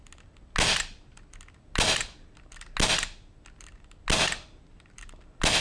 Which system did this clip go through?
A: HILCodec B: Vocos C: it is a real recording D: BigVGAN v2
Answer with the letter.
C